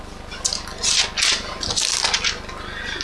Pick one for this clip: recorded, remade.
recorded